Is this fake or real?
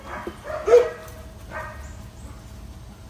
real